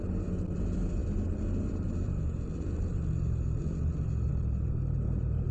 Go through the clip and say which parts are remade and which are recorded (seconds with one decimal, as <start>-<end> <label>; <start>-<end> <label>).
0.0-5.5 recorded